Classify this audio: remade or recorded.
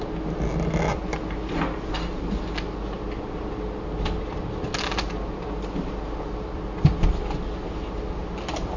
recorded